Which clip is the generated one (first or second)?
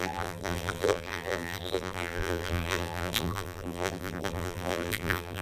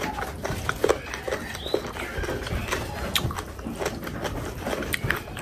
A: first